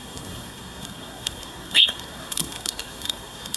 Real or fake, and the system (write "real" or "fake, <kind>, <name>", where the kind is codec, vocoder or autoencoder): fake, codec, SNAC